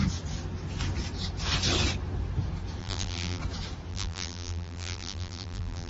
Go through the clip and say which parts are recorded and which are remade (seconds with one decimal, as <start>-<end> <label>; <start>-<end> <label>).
0.0-2.8 recorded; 2.8-3.4 remade; 3.4-3.9 recorded; 3.9-5.9 remade

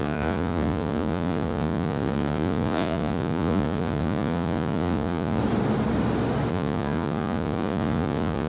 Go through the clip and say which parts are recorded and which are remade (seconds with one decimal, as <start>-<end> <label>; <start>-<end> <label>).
0.0-5.4 remade; 5.4-6.5 recorded; 6.5-8.5 remade